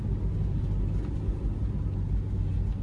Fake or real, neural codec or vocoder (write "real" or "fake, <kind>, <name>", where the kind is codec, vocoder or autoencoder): real